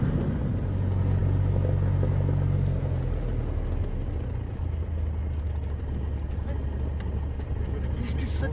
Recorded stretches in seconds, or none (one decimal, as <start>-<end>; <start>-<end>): 0.0-8.5